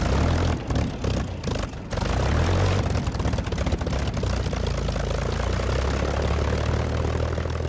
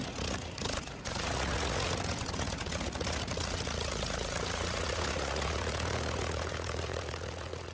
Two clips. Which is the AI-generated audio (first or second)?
second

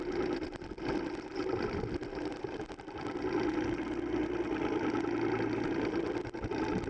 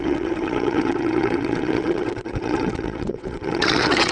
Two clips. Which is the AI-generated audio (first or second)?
second